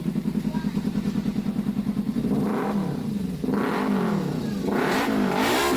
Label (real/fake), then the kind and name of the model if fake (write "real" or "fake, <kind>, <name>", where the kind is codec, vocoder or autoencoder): real